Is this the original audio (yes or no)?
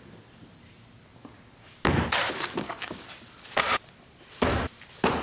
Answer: yes